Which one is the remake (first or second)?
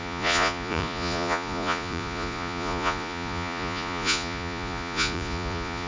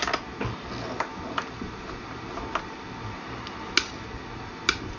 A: first